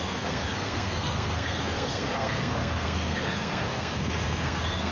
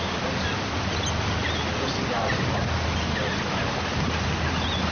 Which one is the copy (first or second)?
first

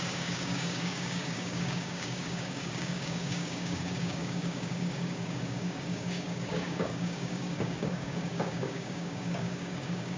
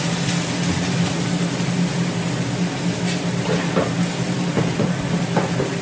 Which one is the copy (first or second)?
first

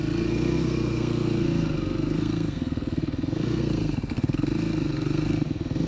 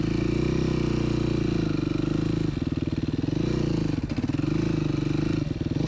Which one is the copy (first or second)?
first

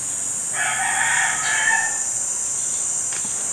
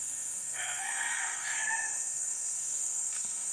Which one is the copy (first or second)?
second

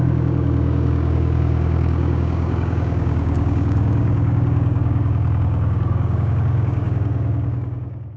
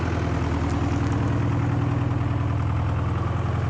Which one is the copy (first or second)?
first